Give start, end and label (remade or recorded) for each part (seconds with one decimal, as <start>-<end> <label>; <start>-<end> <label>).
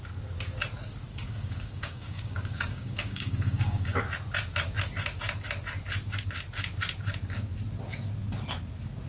0.0-1.1 recorded; 1.1-4.0 remade; 4.0-9.1 recorded